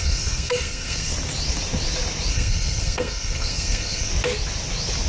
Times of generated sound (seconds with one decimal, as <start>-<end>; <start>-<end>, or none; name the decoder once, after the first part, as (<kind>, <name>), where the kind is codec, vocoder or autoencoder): 0.0-1.1 (codec, SNAC); 2.3-4.1